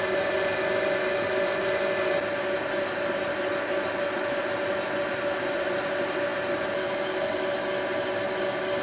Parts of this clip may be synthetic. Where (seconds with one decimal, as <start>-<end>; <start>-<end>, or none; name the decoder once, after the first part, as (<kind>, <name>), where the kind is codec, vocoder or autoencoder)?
none